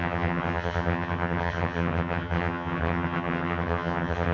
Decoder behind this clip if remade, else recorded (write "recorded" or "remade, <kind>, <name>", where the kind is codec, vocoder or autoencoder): remade, vocoder, HiFi-GAN